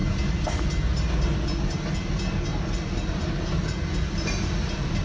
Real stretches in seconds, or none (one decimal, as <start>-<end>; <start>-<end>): 0.0-1.6